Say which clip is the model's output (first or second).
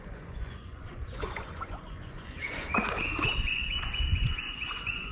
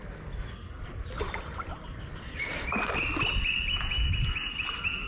first